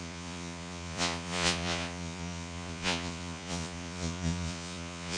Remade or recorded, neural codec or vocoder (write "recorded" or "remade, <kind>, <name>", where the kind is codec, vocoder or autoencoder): remade, vocoder, Vocos